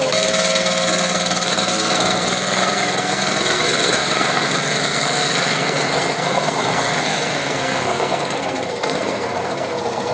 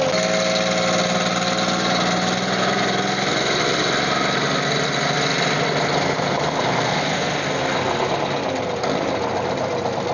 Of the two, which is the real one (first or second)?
second